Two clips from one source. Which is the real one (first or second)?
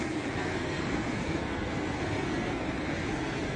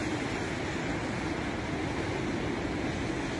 second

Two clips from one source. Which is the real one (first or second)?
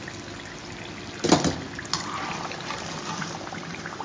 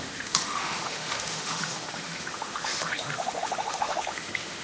first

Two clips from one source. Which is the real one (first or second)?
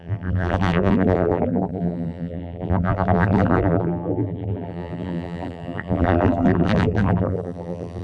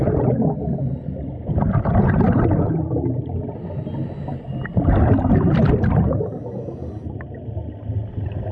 second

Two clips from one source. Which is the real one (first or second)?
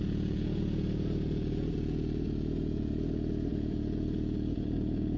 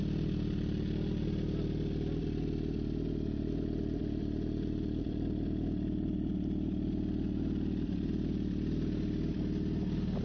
second